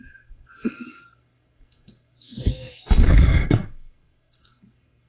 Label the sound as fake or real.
fake